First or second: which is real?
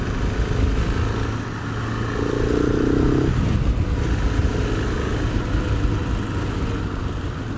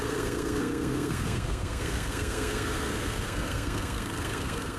first